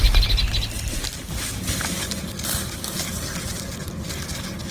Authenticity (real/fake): real